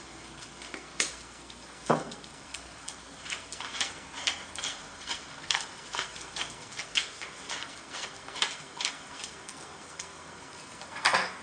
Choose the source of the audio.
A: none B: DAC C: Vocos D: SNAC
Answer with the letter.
D